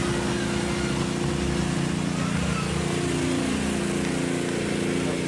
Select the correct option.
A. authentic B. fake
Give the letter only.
A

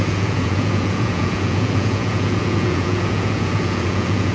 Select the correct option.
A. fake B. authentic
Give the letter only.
A